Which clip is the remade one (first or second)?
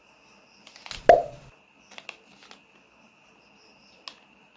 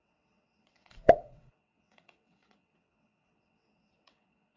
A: second